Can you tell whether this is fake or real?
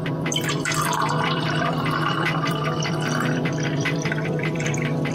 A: fake